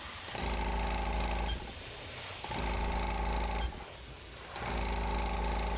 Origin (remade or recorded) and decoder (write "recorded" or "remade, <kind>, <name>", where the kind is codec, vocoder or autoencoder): recorded